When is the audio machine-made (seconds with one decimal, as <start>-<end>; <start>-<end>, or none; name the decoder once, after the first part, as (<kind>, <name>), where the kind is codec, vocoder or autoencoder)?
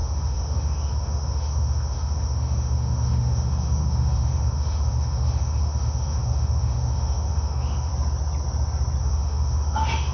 0.0-7.9 (autoencoder, DAC-VAE); 9.0-10.1